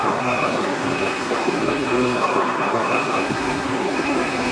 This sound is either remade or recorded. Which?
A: remade